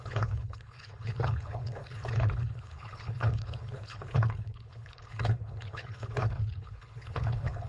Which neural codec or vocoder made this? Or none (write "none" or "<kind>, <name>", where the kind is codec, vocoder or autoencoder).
codec, HILCodec